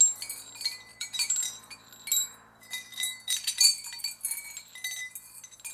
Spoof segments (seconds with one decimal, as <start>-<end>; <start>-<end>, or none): 0.9-1.9; 2.9-4.0